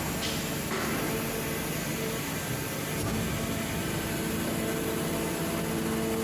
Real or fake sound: real